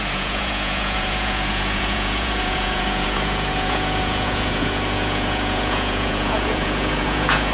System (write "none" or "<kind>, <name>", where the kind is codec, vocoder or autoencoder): vocoder, Vocos